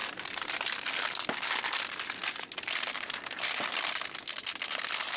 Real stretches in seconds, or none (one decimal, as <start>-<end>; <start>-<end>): 0.0-5.2